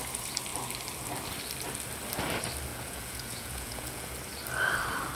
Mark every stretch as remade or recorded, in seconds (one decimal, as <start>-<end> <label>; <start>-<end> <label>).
0.0-2.7 recorded; 2.7-4.1 remade; 4.1-5.2 recorded